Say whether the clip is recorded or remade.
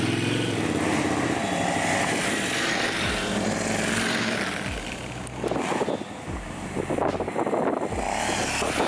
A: recorded